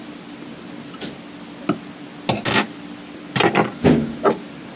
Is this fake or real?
real